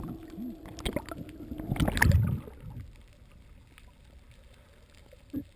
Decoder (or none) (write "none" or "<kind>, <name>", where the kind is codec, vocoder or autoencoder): none